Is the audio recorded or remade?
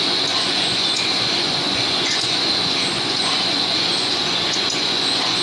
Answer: remade